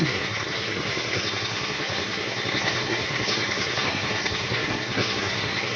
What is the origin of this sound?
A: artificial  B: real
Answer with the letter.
A